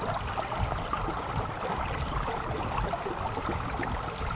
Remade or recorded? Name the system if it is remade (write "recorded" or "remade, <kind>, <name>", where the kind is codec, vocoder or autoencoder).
recorded